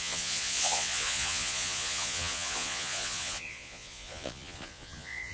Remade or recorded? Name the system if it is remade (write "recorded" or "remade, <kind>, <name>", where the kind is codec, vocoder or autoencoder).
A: remade, vocoder, Vocos